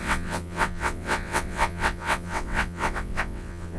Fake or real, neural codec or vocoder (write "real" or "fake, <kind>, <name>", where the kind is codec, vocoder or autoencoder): fake, vocoder, WaveNeXt